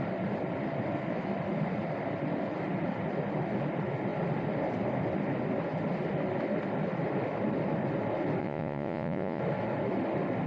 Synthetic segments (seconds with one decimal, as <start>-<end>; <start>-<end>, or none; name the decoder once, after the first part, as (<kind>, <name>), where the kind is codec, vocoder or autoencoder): 8.4-9.4 (vocoder, Vocos)